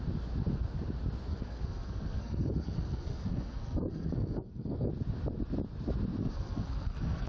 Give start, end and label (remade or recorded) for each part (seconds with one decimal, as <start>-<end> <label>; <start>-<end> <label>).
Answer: 0.0-1.3 recorded; 1.3-4.9 remade; 4.9-6.2 recorded; 6.2-7.3 remade